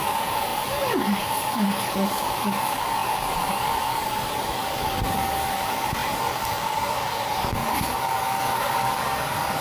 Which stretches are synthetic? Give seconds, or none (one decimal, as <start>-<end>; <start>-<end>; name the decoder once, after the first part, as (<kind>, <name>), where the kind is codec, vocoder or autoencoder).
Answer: 0.0-9.6 (codec, DAC)